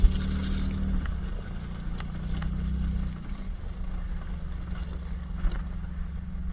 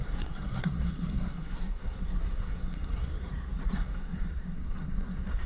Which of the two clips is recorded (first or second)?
first